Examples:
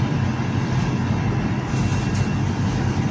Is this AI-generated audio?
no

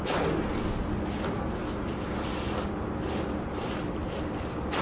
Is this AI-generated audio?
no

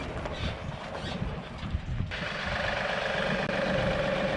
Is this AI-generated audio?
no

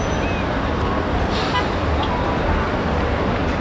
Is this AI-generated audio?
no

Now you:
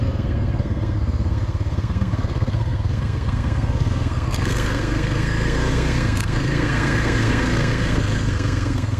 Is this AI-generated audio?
yes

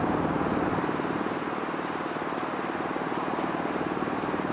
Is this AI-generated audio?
no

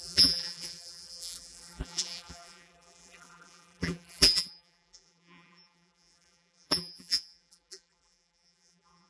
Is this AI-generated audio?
yes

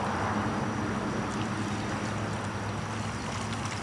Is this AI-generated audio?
no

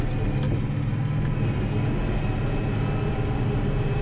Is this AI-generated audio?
no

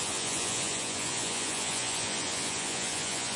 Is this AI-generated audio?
yes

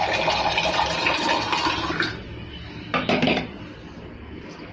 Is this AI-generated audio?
no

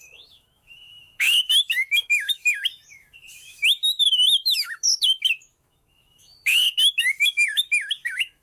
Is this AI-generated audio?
yes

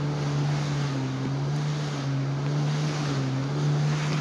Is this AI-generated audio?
no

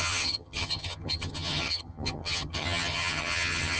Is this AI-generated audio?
yes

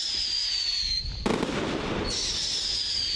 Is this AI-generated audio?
no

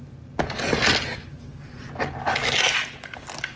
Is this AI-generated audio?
no